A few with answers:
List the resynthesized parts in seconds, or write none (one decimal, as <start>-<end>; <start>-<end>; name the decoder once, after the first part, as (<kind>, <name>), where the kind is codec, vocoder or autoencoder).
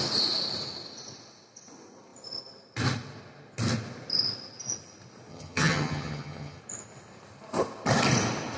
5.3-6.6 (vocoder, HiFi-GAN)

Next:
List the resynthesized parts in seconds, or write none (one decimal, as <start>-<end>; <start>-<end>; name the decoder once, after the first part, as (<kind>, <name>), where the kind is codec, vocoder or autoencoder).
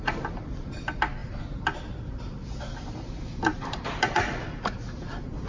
none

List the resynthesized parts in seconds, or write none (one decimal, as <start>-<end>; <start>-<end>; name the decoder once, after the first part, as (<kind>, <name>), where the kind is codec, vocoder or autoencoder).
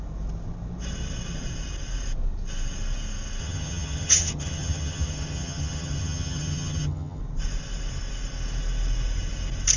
3.4-7.2 (vocoder, HiFi-GAN)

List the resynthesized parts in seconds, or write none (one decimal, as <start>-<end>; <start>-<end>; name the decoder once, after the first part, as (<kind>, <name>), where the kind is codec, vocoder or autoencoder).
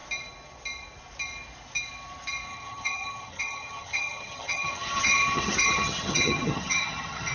2.5-7.3 (vocoder, HiFi-GAN)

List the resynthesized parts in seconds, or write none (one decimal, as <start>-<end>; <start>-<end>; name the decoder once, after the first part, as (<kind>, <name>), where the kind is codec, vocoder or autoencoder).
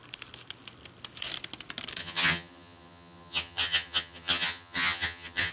2.0-5.5 (vocoder, HiFi-GAN)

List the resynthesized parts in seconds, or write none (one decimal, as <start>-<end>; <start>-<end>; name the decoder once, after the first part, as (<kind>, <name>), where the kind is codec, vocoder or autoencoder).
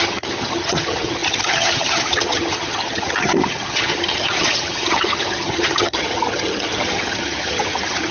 0.0-8.1 (vocoder, HiFi-GAN)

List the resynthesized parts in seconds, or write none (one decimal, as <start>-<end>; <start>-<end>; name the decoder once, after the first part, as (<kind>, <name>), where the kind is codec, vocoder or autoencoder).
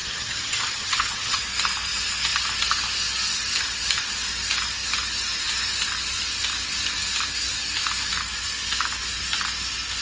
0.0-1.4 (vocoder, HiFi-GAN)